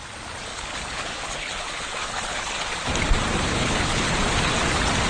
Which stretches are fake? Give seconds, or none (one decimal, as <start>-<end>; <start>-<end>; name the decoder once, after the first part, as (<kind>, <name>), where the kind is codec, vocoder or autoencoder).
0.5-2.7 (codec, HILCodec); 3.5-4.1